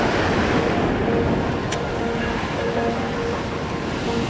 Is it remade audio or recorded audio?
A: recorded